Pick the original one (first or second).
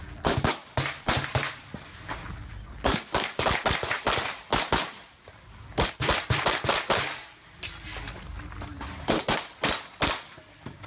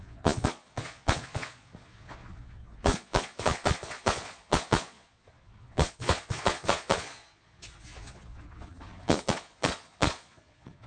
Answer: first